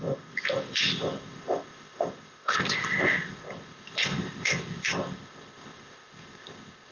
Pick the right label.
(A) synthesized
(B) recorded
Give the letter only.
A